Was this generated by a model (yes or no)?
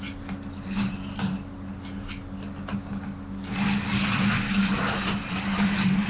no